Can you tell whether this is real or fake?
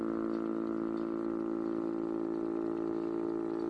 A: real